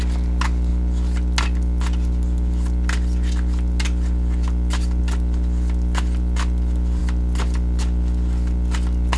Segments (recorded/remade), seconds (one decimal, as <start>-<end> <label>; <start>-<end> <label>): 0.0-9.2 recorded